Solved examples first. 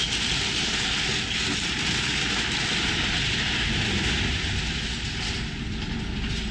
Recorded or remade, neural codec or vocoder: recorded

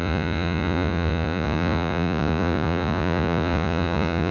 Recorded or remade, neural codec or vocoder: remade, vocoder, Vocos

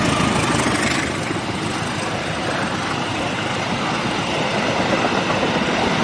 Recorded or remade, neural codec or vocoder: recorded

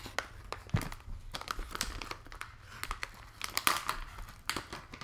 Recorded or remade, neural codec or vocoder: recorded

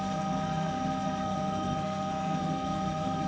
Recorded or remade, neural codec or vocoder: remade, codec, SNAC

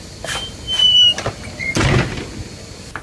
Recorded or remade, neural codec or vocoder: recorded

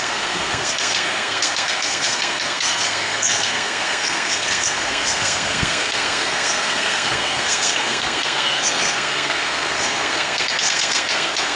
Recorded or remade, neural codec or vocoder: remade, codec, SNAC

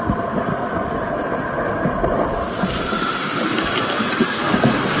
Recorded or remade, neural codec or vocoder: recorded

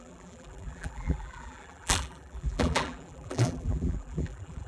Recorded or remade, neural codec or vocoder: remade, vocoder, BigVGAN v2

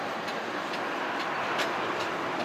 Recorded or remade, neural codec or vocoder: recorded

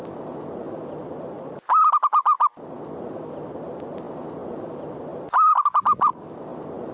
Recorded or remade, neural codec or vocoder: recorded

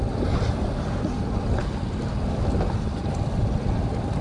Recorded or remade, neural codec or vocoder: recorded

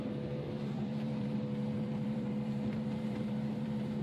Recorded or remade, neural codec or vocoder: remade, vocoder, BigVGAN v2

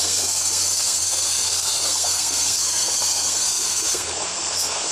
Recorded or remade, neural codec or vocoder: remade, codec, SNAC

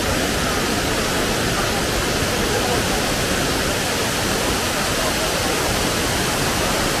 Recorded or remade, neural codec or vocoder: recorded